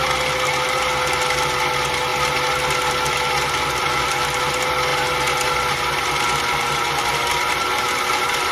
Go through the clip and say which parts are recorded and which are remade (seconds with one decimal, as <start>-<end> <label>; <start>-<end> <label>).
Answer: 0.0-8.5 recorded